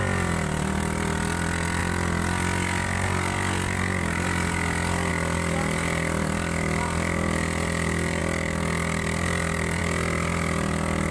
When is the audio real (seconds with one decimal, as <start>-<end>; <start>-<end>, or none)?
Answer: 0.0-11.1